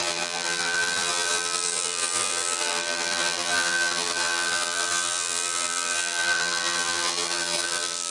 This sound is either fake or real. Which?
fake